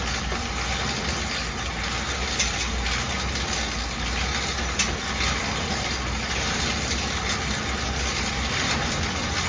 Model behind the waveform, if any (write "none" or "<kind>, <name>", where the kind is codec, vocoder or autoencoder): none